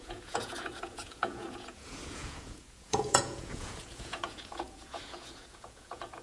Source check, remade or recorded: remade